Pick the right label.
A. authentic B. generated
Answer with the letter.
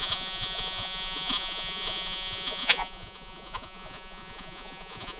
B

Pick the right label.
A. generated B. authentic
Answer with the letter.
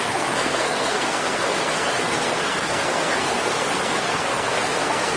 A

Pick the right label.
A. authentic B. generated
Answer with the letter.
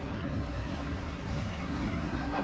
B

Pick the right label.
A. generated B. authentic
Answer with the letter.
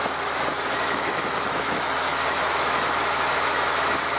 A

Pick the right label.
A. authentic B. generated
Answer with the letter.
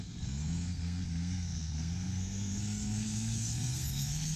B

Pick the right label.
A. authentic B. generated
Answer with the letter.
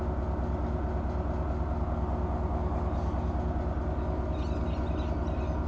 A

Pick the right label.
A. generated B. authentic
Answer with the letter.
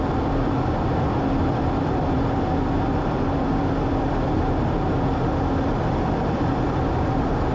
A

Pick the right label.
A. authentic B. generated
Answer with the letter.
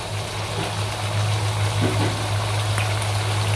A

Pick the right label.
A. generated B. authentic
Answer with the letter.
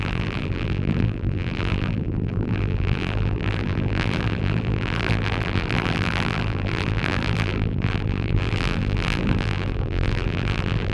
A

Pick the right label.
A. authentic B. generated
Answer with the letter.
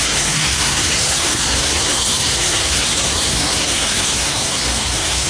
B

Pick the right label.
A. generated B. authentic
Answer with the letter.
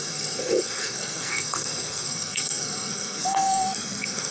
A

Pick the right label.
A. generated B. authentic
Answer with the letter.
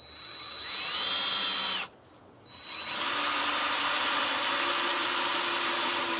B